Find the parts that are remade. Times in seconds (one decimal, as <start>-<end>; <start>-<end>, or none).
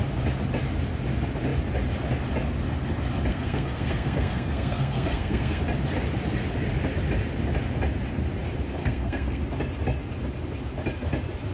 3.3-5.6; 8.8-9.4